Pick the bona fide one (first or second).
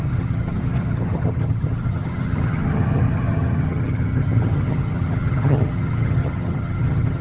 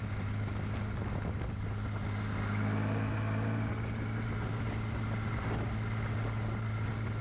second